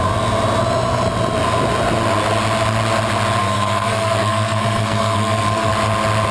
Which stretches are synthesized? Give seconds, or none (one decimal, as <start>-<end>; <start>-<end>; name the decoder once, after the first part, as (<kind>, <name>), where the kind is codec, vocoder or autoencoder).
3.4-5.7 (codec, SNAC)